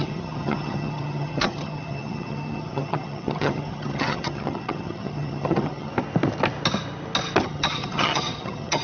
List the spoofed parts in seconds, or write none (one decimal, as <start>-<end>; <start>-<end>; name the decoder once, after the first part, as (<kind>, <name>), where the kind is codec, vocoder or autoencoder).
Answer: 0.0-5.9 (vocoder, HiFi-GAN); 7.4-8.8